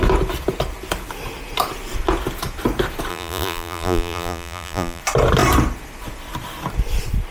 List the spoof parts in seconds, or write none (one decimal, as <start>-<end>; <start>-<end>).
3.1-5.0